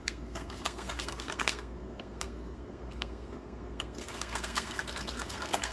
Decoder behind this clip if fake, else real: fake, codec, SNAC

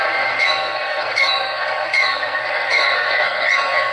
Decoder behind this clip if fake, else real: fake, codec, SNAC